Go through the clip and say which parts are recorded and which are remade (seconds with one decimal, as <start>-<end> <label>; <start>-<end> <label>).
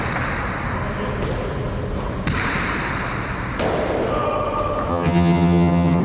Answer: 0.0-4.9 recorded; 4.9-6.0 remade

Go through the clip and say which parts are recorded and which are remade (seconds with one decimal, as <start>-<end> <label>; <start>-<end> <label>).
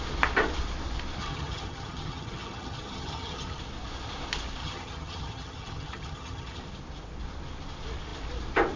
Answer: 0.0-1.2 recorded; 1.2-3.6 remade; 3.6-4.6 recorded; 4.6-6.6 remade; 6.6-8.8 recorded